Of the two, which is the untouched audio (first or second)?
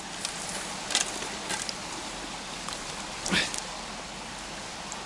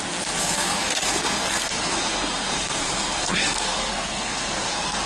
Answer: first